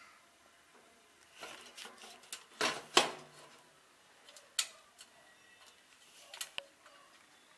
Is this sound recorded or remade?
recorded